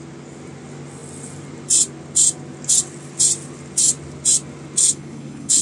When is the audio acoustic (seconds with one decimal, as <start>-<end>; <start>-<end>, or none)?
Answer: 0.0-4.8